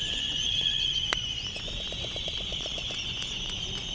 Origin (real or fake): fake